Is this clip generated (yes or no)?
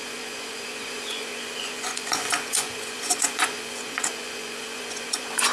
yes